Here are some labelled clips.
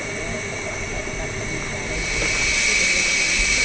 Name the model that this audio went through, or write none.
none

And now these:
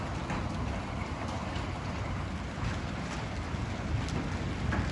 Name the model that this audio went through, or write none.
none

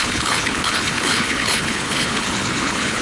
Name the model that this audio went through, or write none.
codec, HILCodec